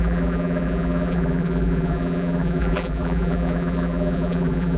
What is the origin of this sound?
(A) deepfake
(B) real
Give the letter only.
A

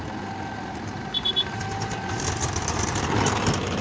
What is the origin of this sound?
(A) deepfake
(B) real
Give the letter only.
A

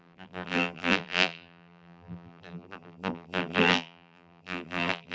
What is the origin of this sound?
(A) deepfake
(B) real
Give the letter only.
A